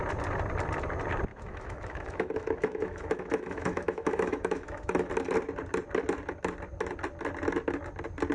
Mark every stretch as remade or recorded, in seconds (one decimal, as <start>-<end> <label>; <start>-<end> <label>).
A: 0.0-1.3 recorded; 1.3-5.1 remade; 5.1-8.3 recorded